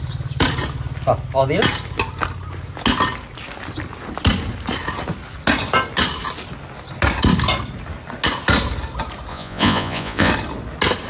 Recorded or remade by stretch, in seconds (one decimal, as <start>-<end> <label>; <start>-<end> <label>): 0.0-9.3 recorded; 9.3-10.3 remade; 10.3-11.1 recorded